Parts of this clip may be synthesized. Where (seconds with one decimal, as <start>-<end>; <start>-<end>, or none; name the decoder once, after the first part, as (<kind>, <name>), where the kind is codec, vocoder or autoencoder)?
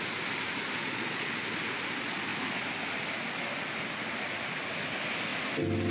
0.8-1.3 (vocoder, Vocos)